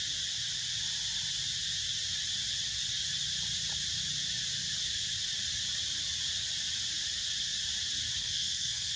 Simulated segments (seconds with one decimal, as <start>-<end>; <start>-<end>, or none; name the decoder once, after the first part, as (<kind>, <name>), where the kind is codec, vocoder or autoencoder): 8.2-9.0 (codec, SNAC)